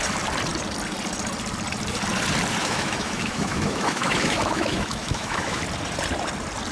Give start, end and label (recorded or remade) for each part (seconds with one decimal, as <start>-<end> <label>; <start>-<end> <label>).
0.0-2.6 recorded; 2.6-5.6 remade; 5.6-6.7 recorded